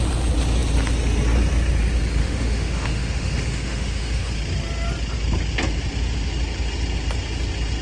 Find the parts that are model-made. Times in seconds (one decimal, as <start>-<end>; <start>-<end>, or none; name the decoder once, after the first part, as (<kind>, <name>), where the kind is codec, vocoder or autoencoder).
2.2-4.3 (autoencoder, DAC-VAE)